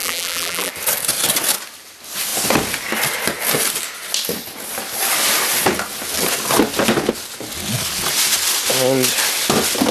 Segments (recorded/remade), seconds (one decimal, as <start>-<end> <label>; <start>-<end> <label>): 0.0-0.7 remade; 0.7-9.9 recorded